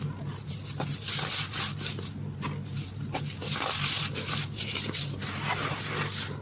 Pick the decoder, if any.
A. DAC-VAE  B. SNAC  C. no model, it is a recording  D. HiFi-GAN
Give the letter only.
C